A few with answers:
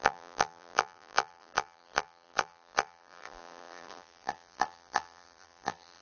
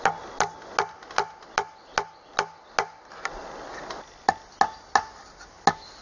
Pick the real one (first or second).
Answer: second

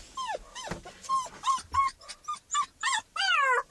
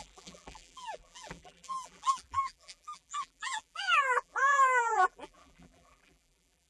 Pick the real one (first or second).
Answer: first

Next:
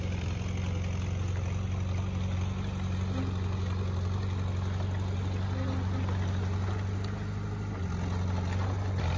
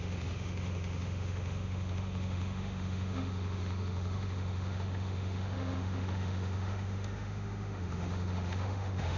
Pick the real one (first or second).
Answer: first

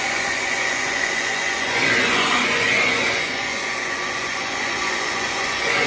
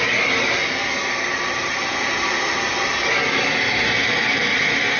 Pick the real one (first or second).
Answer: second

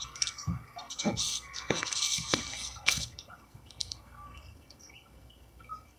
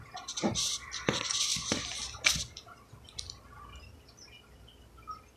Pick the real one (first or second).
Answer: second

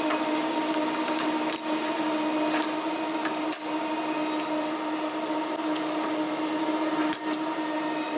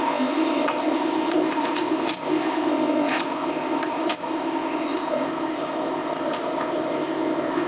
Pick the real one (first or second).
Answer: first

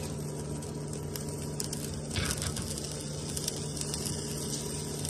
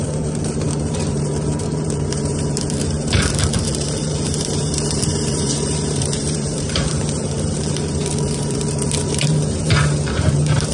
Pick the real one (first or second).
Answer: first